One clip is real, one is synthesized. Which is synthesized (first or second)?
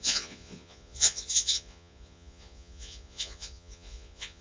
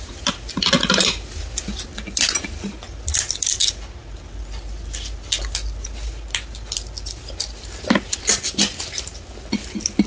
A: first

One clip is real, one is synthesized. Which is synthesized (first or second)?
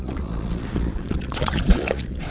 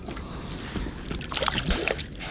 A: first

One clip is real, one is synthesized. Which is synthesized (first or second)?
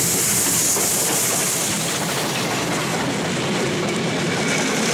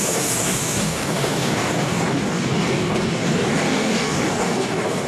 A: second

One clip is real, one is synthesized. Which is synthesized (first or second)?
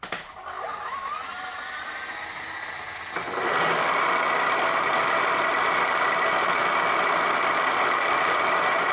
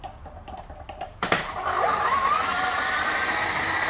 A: second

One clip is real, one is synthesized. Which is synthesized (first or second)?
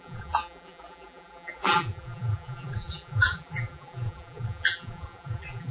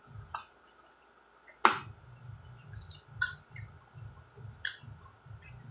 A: first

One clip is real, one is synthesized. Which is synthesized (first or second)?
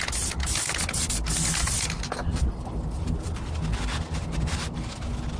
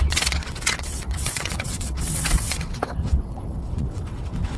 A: second